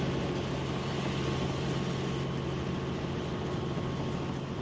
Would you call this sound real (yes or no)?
yes